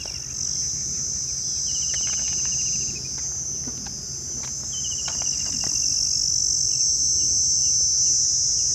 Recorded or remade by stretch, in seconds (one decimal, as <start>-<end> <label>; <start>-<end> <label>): 0.0-8.7 remade